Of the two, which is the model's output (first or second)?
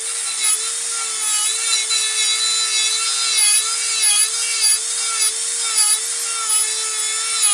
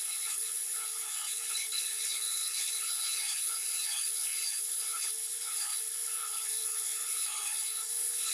second